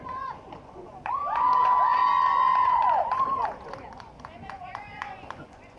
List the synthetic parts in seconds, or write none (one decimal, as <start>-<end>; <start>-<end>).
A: 0.0-2.0; 2.6-5.8